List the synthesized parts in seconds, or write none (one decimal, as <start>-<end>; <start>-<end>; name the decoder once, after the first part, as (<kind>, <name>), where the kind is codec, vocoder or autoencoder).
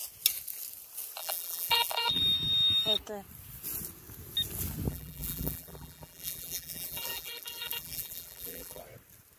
1.2-2.2 (vocoder, BigVGAN v2); 4.9-8.8